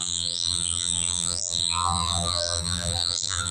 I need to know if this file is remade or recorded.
remade